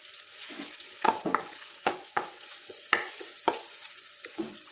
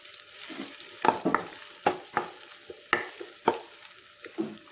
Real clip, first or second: second